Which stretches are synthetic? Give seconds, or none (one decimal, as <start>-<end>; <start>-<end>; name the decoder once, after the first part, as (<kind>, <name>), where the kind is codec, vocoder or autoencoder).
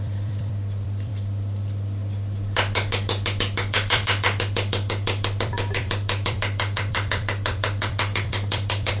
0.0-1.1 (vocoder, BigVGAN v2); 3.4-9.0